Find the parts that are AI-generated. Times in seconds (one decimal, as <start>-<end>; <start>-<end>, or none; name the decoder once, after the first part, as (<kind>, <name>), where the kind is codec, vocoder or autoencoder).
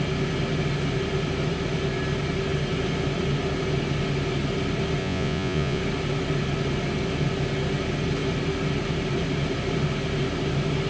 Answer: 5.0-5.8 (vocoder, Vocos)